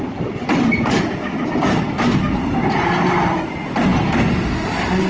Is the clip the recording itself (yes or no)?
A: yes